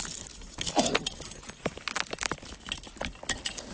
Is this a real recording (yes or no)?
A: yes